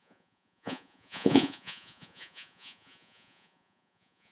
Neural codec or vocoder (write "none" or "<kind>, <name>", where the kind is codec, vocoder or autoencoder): vocoder, Vocos